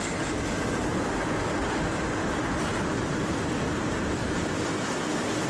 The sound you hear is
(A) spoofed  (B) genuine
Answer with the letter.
B